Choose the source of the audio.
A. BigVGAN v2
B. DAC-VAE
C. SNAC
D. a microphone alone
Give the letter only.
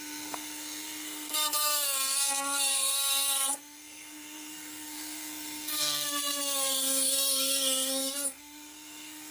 C